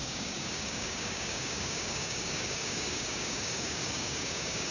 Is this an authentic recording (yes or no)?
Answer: no